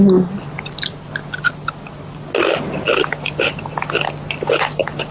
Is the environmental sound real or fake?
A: real